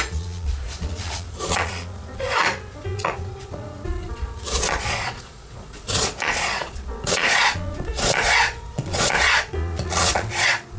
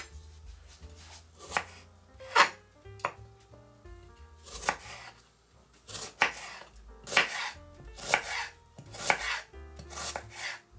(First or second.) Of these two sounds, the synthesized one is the first